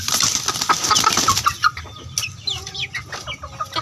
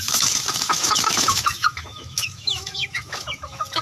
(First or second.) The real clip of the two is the first